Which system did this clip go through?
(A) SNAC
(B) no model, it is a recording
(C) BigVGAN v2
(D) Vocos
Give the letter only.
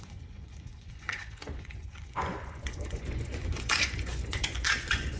D